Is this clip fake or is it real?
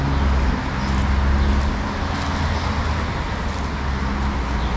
real